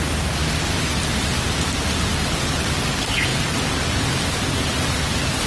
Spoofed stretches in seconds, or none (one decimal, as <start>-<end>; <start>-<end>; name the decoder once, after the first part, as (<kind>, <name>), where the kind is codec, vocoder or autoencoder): 0.4-1.7 (vocoder, BigVGAN v2)